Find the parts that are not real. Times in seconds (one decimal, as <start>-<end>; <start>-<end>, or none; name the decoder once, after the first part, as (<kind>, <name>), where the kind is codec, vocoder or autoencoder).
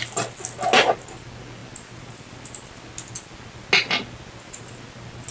none